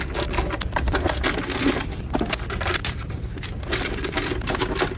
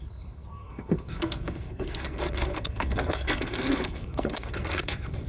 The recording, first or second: first